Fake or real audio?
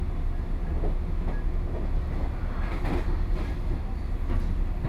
real